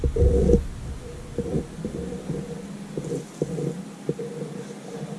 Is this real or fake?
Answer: real